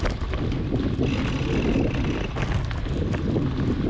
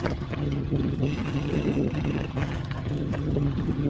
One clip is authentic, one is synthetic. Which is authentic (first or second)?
first